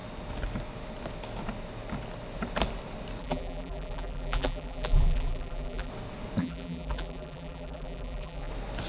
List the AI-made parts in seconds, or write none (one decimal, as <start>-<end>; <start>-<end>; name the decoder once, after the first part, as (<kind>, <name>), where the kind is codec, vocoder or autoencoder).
3.2-5.9 (vocoder, BigVGAN v2); 6.4-8.5